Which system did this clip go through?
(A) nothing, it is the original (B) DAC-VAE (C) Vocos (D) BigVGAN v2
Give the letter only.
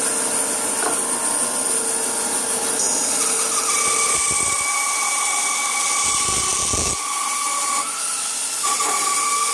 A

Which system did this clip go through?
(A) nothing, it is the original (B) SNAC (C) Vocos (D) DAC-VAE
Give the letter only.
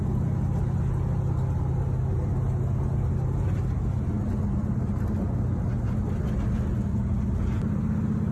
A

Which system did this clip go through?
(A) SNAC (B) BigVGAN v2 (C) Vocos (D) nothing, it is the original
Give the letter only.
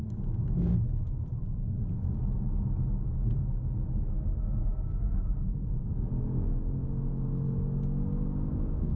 D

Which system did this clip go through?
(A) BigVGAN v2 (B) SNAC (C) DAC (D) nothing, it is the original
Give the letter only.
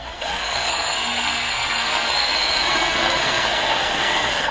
B